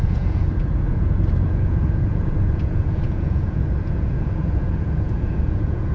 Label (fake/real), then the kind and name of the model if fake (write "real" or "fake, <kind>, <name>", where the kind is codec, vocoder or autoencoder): fake, vocoder, Vocos